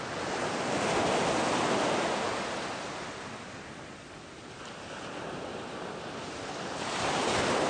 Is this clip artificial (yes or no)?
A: no